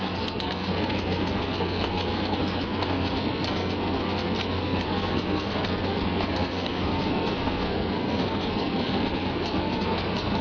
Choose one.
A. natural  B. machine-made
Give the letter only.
B